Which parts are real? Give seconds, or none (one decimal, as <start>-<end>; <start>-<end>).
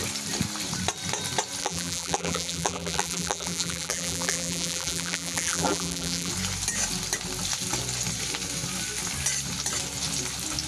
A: 0.0-1.6; 6.3-10.7